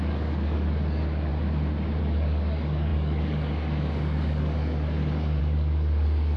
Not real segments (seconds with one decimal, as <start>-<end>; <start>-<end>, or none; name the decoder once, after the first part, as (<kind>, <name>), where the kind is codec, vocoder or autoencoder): 0.0-1.3 (codec, DAC); 2.0-6.4